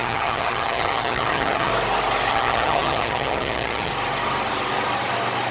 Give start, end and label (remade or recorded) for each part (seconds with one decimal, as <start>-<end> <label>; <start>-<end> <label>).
0.0-1.7 remade; 1.7-2.3 recorded; 2.3-3.9 remade; 3.9-5.5 recorded